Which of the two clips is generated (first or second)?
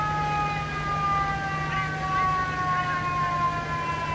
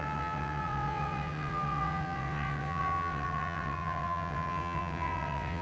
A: second